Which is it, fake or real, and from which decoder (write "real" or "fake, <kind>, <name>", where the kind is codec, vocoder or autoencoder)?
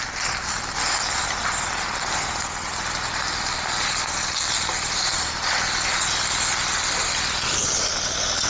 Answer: real